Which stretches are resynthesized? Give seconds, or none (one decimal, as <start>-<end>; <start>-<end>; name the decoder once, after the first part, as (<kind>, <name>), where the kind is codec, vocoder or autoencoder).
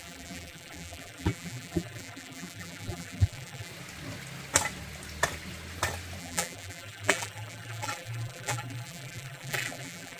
0.0-3.7 (vocoder, BigVGAN v2); 6.2-10.2